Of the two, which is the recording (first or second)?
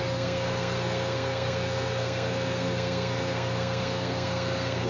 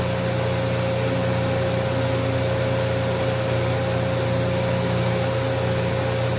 second